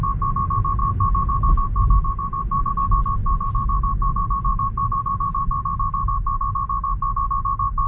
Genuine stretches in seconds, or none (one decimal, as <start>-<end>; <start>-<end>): 0.0-0.8; 2.7-3.2; 5.5-7.9